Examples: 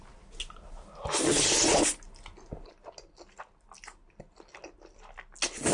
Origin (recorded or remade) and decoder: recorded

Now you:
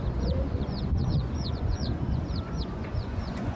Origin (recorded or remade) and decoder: remade, vocoder, Vocos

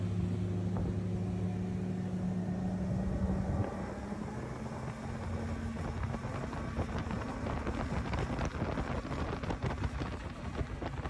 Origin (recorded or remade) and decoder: recorded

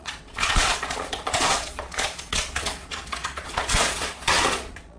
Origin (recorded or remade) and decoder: remade, vocoder, Vocos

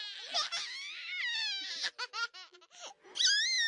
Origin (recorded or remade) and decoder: recorded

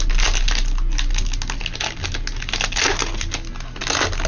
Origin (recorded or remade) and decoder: recorded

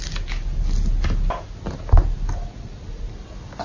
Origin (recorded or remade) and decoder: recorded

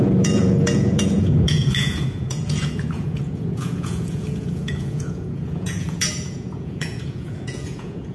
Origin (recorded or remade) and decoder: remade, vocoder, Vocos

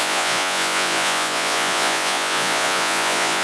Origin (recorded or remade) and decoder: remade, vocoder, Vocos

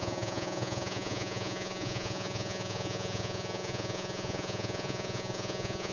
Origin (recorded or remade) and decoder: remade, vocoder, Vocos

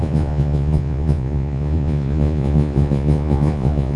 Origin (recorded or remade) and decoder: remade, vocoder, Vocos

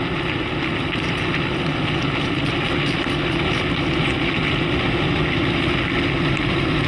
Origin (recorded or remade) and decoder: recorded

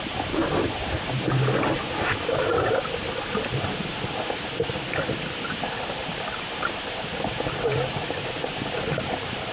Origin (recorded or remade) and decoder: recorded